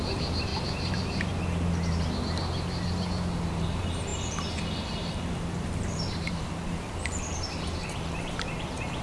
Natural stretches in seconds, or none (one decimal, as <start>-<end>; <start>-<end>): 0.5-3.5